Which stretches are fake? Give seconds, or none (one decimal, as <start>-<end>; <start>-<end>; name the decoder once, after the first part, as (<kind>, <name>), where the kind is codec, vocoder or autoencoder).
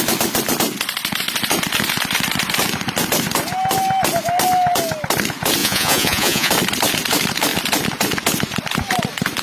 5.6-6.5 (vocoder, Vocos)